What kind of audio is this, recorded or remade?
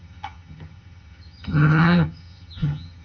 remade